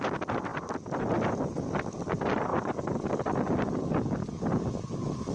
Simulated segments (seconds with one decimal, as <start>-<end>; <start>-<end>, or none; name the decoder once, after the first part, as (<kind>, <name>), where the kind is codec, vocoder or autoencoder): none